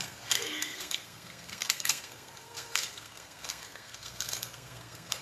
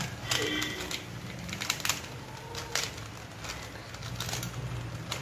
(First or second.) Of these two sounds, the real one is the second